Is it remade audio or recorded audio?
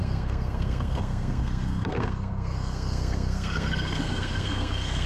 remade